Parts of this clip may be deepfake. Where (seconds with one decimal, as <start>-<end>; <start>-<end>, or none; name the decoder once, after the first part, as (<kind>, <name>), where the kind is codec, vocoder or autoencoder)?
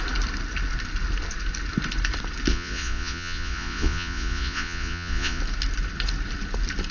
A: 2.5-5.4 (vocoder, Vocos)